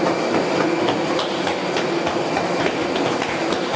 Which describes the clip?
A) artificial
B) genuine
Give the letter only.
B